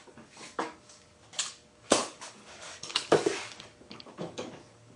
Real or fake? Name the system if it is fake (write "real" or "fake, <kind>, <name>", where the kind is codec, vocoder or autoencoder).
fake, codec, DAC